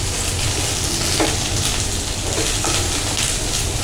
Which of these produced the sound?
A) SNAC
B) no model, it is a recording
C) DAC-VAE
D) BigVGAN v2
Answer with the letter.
B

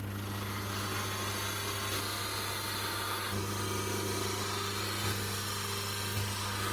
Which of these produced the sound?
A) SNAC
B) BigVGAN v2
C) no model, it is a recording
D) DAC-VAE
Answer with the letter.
C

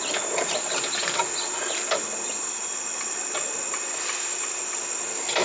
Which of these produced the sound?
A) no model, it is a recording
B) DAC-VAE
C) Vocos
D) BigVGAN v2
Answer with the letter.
A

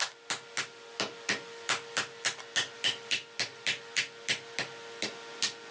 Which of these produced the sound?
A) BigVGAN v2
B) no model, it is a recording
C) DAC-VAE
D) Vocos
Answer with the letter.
B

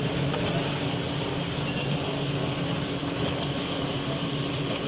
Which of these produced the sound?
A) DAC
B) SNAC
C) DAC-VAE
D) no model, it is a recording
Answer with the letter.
D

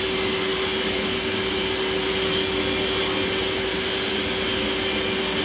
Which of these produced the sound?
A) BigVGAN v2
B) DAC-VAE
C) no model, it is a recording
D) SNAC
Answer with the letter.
C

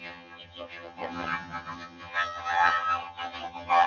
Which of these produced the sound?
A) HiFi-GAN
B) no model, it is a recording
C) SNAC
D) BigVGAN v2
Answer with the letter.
A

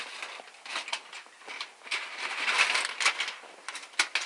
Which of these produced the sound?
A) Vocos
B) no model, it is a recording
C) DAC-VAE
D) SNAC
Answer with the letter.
B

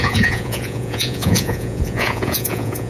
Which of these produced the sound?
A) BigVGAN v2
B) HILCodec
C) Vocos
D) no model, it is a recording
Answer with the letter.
C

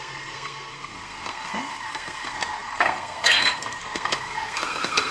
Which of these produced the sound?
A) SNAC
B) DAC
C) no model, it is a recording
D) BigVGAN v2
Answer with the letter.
A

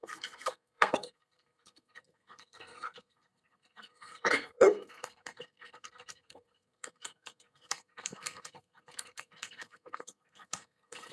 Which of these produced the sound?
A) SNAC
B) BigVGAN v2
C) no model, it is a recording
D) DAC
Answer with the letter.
A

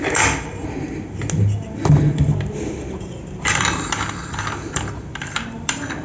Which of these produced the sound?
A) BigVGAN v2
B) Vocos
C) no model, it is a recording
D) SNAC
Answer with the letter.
C